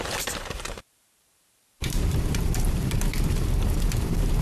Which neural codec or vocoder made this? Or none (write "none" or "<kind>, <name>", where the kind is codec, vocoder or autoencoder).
vocoder, BigVGAN v2